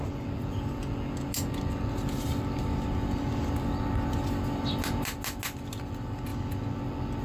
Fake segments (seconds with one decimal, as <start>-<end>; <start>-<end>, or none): none

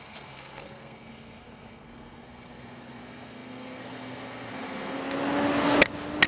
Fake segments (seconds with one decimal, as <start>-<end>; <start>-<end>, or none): 0.0-5.0

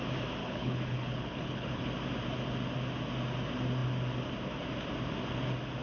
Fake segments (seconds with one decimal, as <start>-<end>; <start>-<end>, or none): 0.4-1.8

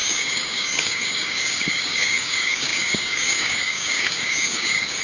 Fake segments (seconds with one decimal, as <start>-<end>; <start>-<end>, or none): 0.0-5.0